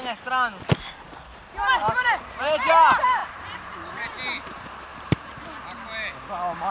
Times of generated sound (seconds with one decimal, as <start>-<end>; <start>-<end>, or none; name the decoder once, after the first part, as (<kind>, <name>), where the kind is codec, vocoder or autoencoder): 1.8-2.7 (vocoder, BigVGAN v2); 3.2-3.9; 4.9-5.4